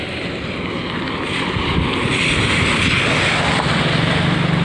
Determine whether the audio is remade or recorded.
recorded